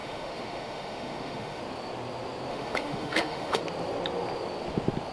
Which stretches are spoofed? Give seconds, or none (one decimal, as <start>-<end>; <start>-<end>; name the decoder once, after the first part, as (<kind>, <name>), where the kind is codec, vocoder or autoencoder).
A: 0.0-1.6 (autoencoder, DAC-VAE); 2.5-3.6

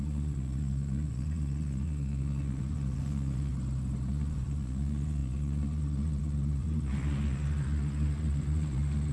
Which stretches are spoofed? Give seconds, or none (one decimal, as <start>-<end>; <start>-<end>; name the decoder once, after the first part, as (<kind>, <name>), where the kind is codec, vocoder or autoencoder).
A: 0.0-3.5 (vocoder, Vocos); 4.1-9.1

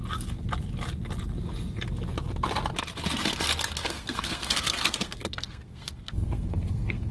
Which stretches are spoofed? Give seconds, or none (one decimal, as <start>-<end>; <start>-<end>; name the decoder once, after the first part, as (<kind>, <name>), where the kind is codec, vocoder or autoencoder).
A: 3.8-7.1 (codec, SNAC)

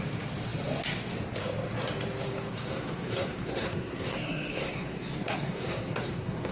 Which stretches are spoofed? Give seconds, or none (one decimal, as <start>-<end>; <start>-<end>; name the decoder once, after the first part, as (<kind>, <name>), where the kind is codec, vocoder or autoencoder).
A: 2.5-6.5 (codec, SNAC)